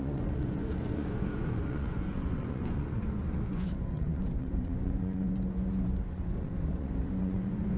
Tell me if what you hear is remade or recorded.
remade